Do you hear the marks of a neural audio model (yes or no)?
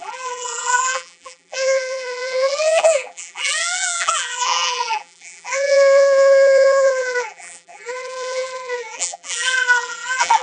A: yes